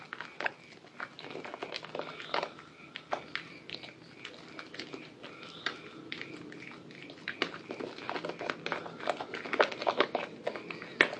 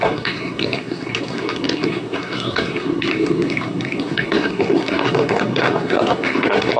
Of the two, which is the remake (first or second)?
second